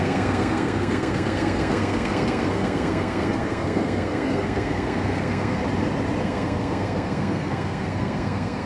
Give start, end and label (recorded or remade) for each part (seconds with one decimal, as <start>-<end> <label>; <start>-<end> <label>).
0.0-5.6 remade; 5.6-6.2 recorded; 6.2-8.7 remade